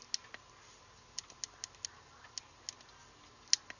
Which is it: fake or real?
real